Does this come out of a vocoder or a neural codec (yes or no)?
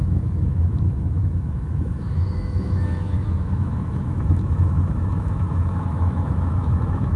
yes